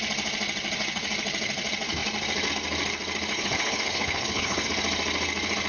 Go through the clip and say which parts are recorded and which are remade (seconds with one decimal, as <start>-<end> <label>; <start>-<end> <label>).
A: 0.0-3.3 recorded; 3.3-4.7 remade; 4.7-5.7 recorded